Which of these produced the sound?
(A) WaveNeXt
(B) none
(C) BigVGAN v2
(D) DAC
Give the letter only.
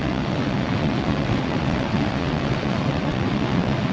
A